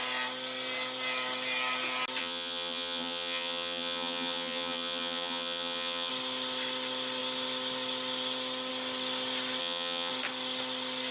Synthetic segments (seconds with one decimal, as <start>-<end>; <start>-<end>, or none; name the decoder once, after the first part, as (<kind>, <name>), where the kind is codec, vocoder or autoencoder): 2.2-6.1 (vocoder, HiFi-GAN); 9.6-10.1